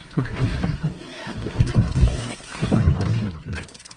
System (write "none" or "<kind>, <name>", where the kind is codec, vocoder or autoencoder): codec, SNAC